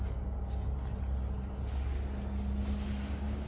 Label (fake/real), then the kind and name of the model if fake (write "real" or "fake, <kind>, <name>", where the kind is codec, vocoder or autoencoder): real